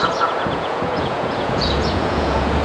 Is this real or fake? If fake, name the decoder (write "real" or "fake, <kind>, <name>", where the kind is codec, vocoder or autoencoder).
fake, vocoder, Vocos